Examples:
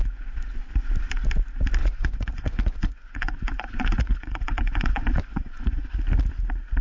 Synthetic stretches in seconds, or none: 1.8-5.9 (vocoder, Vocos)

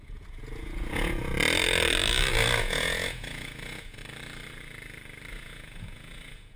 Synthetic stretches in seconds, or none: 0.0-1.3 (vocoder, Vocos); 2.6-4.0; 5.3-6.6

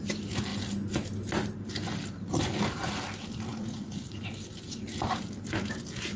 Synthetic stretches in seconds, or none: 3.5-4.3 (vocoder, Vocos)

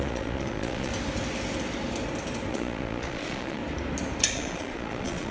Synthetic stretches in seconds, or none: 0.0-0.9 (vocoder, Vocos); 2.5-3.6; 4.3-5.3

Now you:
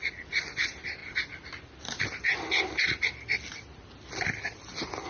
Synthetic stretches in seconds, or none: none